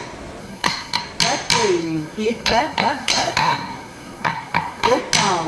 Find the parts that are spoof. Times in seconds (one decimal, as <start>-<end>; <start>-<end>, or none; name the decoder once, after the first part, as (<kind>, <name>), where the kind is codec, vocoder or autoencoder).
0.4-1.0 (codec, SNAC); 1.8-5.0